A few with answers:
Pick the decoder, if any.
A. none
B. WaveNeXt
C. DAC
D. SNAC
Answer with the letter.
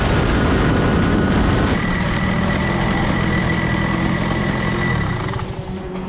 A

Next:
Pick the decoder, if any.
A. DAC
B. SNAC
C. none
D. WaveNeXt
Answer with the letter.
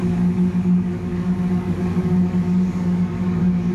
A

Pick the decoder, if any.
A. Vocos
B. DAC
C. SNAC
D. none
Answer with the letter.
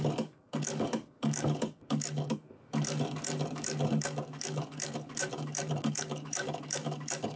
B